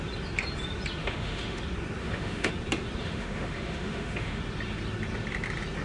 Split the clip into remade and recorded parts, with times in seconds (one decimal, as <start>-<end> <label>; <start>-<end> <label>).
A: 0.0-1.0 recorded; 1.0-1.6 remade; 1.6-2.0 recorded; 2.0-2.5 remade; 2.5-3.0 recorded; 3.0-4.4 remade; 4.4-5.8 recorded